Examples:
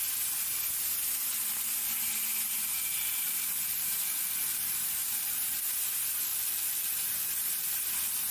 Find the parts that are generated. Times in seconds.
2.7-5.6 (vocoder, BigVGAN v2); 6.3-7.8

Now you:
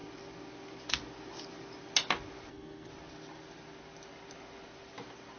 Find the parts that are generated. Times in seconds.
2.5-2.9 (codec, SNAC)

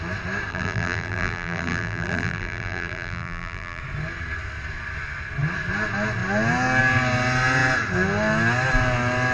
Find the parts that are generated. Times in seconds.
0.5-3.8 (vocoder, BigVGAN v2)

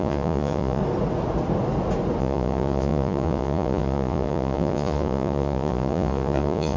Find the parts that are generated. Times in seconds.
0.0-0.8 (vocoder, Vocos); 2.2-6.8

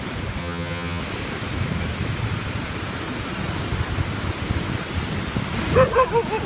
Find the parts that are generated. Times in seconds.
0.4-1.0 (vocoder, HiFi-GAN)

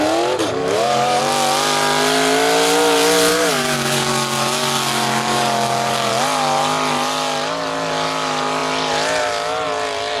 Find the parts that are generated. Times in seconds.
0.4-1.2 (codec, DAC); 3.3-6.1

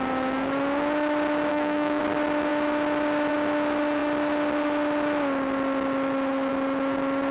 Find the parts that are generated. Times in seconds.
1.5-2.0 (codec, SNAC)

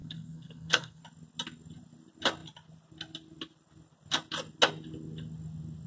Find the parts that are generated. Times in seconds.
0.0-1.0 (codec, SNAC)